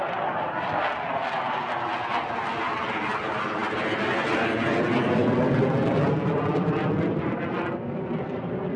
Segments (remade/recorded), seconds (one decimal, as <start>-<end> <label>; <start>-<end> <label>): 0.0-8.8 recorded